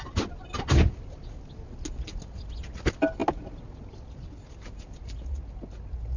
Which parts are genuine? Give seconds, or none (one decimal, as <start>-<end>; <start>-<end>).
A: 0.0-6.2